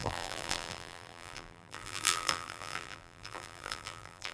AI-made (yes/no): yes